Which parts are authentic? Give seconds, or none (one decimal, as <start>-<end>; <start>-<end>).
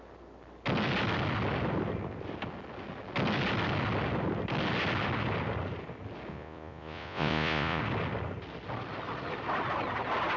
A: 0.0-6.3; 7.8-10.4